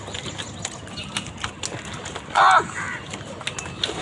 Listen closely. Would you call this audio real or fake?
real